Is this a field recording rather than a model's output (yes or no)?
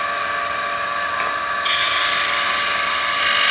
yes